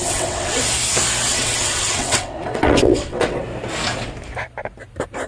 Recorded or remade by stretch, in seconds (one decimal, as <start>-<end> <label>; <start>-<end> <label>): 0.0-0.6 remade; 0.6-1.3 recorded; 1.3-3.4 remade; 3.4-5.3 recorded